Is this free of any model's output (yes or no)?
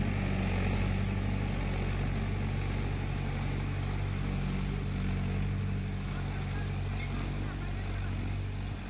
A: yes